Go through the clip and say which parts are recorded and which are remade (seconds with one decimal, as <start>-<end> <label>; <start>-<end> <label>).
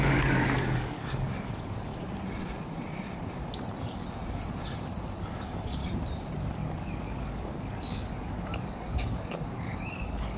0.0-1.9 remade; 1.9-5.2 recorded; 5.2-5.8 remade; 5.8-6.5 recorded; 6.5-10.4 remade